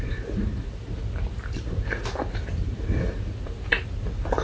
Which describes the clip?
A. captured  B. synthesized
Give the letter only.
B